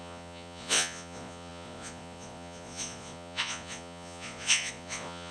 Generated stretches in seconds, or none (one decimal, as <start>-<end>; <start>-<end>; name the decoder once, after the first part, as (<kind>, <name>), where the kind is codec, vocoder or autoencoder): 0.0-5.3 (vocoder, Vocos)